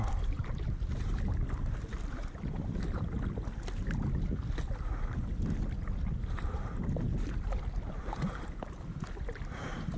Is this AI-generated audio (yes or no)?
no